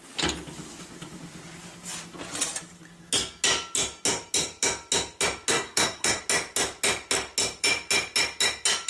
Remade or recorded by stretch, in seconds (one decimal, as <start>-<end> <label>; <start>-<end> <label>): 0.0-5.5 recorded; 5.5-6.2 remade; 6.2-8.9 recorded